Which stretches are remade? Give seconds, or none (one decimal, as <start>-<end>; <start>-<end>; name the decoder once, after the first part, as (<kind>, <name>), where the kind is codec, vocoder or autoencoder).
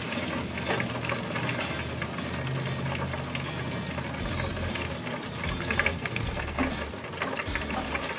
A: 5.9-6.6 (codec, SNAC)